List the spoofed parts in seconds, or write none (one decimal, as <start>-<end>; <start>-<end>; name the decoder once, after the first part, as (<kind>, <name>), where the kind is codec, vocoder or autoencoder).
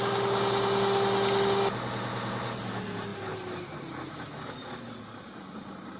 none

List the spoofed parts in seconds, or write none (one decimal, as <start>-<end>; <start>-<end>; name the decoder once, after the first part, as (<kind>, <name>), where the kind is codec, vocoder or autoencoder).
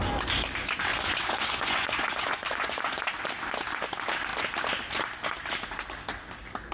0.9-3.0 (vocoder, Vocos)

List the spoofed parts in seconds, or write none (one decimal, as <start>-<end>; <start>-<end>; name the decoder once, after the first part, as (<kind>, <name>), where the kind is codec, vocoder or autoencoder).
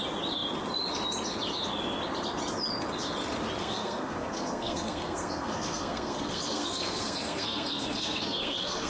3.6-8.9 (codec, SNAC)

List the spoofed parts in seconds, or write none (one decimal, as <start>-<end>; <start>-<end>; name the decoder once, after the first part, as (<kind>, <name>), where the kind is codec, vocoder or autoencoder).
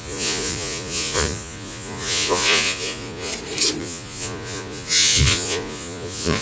0.0-3.3 (vocoder, Vocos); 3.8-6.4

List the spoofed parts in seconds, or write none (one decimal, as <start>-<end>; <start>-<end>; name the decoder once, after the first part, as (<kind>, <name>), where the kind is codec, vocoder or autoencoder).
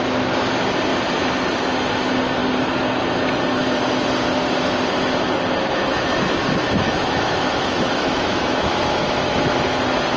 5.6-9.5 (autoencoder, DAC-VAE)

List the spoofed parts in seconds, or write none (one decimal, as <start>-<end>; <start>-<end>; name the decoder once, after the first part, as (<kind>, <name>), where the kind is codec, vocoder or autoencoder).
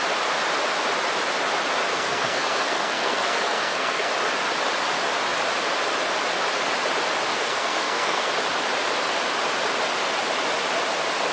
1.9-4.1 (codec, SNAC); 7.3-8.3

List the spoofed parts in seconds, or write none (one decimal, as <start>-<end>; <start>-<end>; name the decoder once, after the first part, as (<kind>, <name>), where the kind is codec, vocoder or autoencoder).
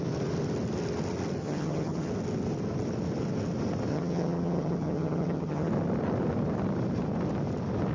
1.4-2.1 (vocoder, HiFi-GAN); 3.9-5.7